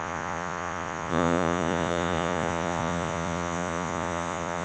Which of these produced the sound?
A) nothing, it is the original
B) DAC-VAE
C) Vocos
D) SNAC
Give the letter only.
C